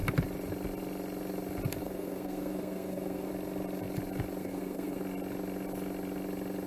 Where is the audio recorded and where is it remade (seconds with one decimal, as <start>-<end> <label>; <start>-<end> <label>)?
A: 0.0-1.8 recorded; 1.8-3.3 remade; 3.3-4.4 recorded; 4.4-5.0 remade; 5.0-6.7 recorded